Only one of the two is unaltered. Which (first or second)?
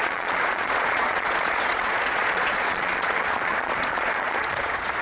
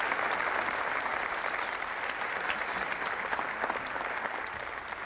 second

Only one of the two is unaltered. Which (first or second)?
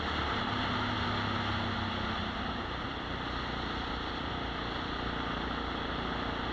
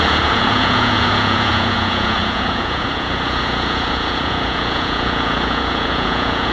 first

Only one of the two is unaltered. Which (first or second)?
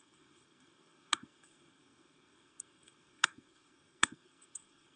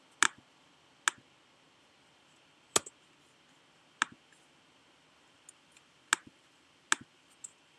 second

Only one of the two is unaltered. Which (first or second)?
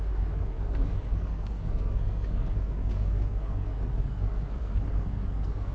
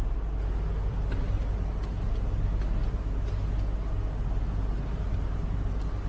second